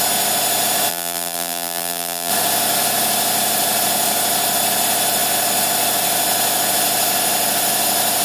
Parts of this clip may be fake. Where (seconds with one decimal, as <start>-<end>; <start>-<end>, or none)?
0.9-2.3